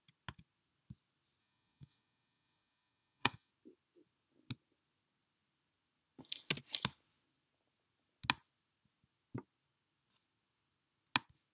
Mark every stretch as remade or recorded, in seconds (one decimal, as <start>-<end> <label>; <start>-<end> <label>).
0.0-1.4 recorded; 1.4-3.5 remade; 3.5-11.5 recorded